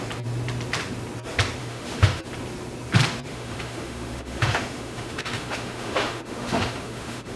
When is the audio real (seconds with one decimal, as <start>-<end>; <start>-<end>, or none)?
0.0-1.6; 2.2-3.3